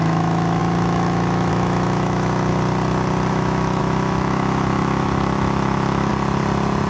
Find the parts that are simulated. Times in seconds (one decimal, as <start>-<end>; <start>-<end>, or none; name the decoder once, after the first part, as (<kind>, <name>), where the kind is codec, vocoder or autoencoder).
0.0-2.5 (autoencoder, DAC-VAE); 3.3-6.1